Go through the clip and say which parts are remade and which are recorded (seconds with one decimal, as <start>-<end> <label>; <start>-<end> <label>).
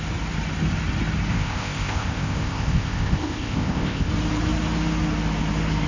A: 0.0-1.3 recorded; 1.3-4.1 remade; 4.1-5.9 recorded